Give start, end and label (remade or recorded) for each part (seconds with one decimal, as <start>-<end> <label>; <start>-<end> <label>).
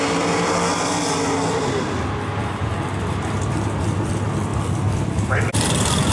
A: 0.0-2.4 recorded; 2.4-4.1 remade; 4.1-4.5 recorded; 4.5-6.1 remade